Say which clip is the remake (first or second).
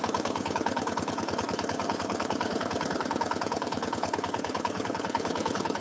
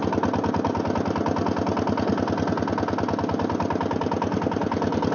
first